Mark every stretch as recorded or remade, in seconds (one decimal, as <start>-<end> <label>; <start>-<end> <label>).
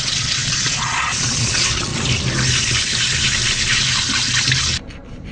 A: 0.0-1.9 remade; 1.9-5.3 recorded